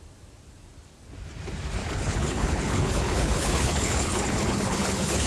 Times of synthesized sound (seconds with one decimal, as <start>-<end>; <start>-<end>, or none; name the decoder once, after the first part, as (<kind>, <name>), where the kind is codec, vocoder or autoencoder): 1.8-5.3 (codec, HILCodec)